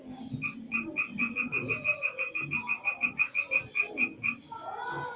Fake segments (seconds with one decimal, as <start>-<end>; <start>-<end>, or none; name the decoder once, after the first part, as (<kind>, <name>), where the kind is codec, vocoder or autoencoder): none